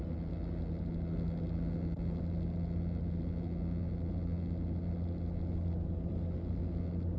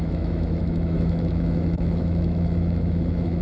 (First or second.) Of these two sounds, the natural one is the first